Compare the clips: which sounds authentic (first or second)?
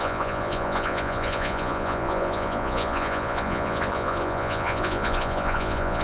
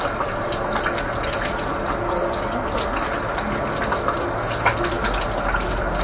second